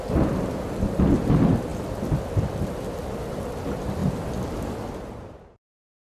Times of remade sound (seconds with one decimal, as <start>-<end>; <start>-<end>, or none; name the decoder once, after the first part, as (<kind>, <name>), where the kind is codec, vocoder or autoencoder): none